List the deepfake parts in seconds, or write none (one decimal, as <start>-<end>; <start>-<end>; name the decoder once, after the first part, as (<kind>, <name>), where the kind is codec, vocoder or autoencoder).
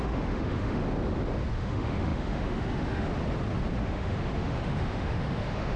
0.0-0.8 (autoencoder, DAC-VAE); 1.5-3.1; 3.8-5.8